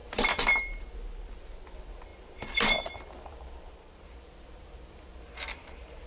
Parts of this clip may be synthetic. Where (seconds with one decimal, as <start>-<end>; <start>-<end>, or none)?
0.0-0.8; 2.1-3.9